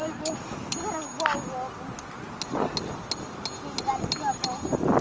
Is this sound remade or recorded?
recorded